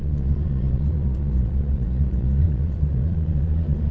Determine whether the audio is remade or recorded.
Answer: remade